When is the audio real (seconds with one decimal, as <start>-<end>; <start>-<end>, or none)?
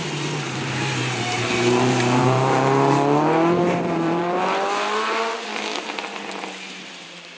5.5-6.9